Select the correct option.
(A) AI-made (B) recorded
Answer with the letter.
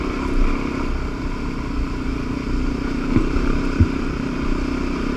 B